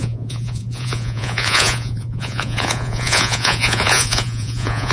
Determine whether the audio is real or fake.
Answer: fake